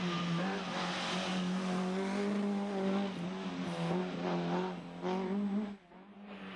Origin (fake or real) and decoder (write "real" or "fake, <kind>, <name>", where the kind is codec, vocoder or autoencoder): real